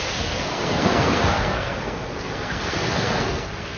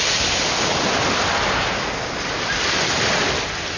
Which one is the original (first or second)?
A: second